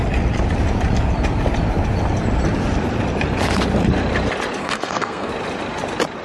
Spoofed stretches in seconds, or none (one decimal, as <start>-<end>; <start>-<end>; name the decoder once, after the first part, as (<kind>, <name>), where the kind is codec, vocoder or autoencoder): 4.6-5.3 (codec, SNAC)